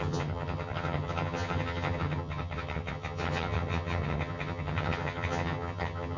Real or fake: fake